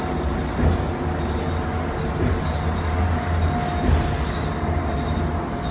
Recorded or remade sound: recorded